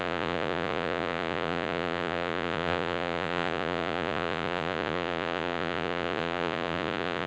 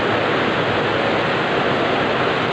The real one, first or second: second